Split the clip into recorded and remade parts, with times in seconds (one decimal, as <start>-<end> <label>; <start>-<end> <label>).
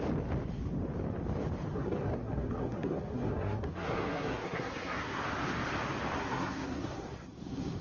0.0-1.7 recorded; 1.7-5.2 remade; 5.2-6.2 recorded; 6.2-7.8 remade